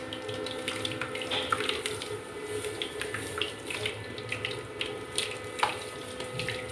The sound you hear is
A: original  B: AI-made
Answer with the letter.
A